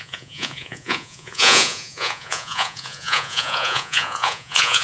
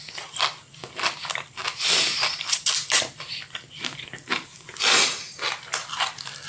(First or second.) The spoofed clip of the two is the first